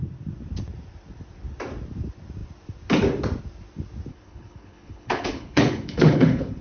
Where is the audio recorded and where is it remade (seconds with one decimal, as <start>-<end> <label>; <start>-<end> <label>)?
0.0-4.1 recorded; 4.1-6.6 remade